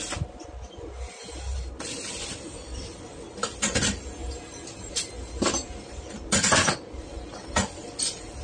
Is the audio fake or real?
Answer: real